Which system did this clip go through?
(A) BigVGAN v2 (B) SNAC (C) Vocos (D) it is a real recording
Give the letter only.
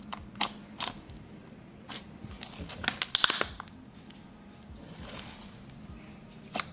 D